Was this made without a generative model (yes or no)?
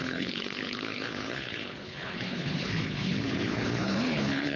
no